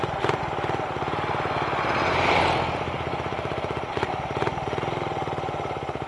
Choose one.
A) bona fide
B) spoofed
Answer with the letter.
A